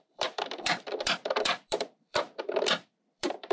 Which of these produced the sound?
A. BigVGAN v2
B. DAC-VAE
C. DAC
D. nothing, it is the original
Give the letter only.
A